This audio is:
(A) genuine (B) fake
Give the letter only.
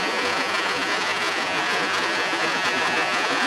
B